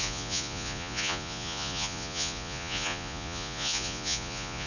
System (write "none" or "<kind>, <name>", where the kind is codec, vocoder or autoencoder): vocoder, Vocos